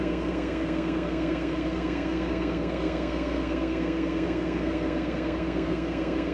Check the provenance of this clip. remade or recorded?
remade